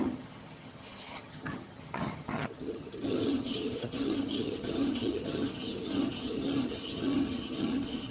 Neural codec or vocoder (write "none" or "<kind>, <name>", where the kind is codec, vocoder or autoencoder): vocoder, HiFi-GAN